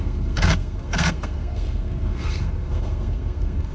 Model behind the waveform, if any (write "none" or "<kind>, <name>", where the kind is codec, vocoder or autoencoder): codec, SNAC